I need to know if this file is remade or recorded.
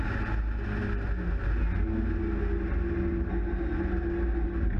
recorded